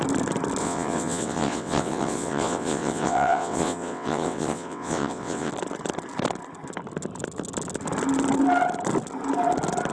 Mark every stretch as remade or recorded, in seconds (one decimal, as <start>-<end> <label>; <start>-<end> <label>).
0.0-0.6 recorded; 0.6-5.5 remade; 5.5-9.9 recorded